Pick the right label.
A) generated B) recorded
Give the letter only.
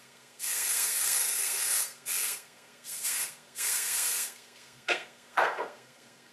A